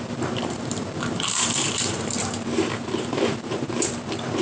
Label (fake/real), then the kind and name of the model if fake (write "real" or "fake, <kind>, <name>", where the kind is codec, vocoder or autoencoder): fake, vocoder, BigVGAN v2